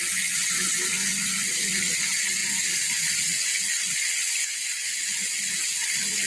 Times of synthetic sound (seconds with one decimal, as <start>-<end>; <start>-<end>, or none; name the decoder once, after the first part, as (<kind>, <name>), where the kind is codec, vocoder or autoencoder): none